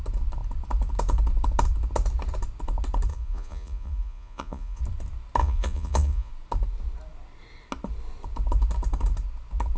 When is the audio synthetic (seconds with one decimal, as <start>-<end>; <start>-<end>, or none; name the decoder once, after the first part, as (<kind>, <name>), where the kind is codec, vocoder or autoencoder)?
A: 3.1-4.8 (vocoder, Vocos); 5.4-6.3